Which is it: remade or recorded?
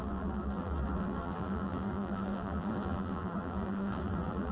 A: remade